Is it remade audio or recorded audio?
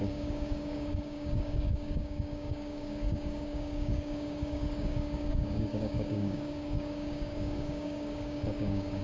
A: remade